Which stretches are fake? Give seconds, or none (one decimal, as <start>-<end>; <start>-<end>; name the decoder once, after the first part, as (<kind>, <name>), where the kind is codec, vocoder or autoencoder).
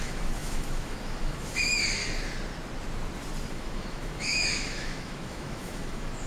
0.0-2.0 (autoencoder, DAC-VAE); 3.5-6.3